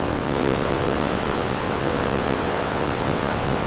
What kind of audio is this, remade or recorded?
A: remade